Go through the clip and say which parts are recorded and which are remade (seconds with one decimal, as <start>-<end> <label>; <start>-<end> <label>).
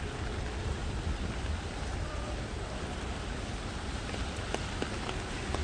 0.0-0.8 recorded; 0.8-4.2 remade; 4.2-5.6 recorded